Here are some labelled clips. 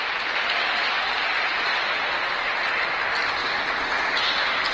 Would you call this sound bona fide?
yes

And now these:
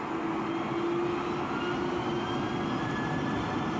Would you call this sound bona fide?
yes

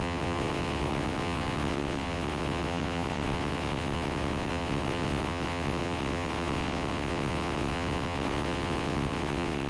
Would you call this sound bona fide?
no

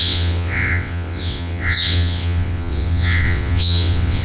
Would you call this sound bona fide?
no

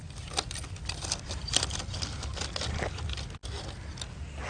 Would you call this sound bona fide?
yes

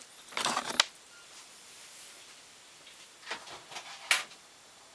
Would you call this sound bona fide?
yes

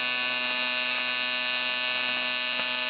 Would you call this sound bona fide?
yes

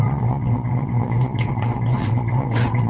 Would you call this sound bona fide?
no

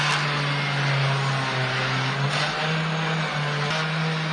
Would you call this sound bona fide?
yes